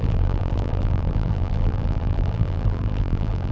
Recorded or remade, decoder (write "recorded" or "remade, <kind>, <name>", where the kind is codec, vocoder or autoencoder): remade, vocoder, BigVGAN v2